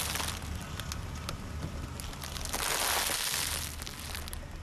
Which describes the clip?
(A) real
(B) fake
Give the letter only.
A